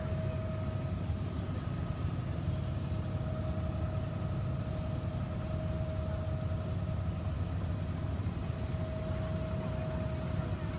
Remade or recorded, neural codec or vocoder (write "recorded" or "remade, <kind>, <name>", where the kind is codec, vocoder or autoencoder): recorded